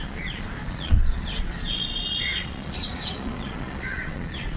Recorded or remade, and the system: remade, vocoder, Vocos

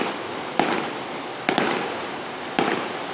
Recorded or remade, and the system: recorded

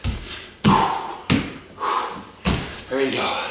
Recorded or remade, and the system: recorded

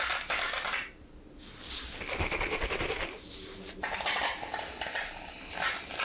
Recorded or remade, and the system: recorded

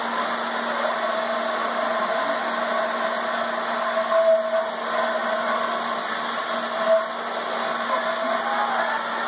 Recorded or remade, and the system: recorded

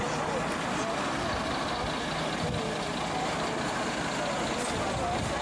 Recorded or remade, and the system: recorded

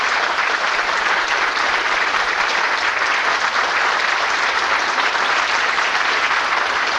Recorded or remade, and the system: remade, vocoder, BigVGAN v2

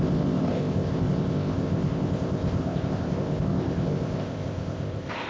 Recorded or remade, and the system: remade, codec, ZipCodec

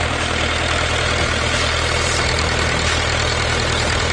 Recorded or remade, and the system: recorded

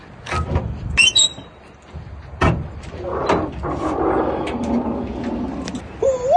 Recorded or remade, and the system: recorded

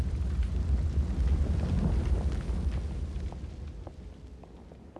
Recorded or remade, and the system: recorded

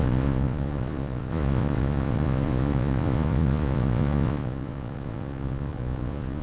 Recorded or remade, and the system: remade, vocoder, Vocos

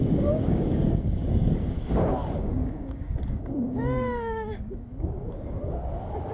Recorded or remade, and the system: remade, codec, DAC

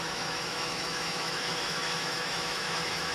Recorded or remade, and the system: remade, autoencoder, DAC-VAE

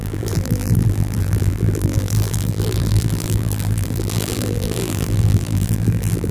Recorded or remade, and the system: remade, vocoder, BigVGAN v2